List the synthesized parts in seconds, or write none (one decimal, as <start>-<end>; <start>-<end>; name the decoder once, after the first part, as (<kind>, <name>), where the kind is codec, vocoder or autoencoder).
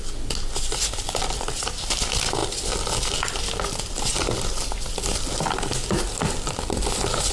none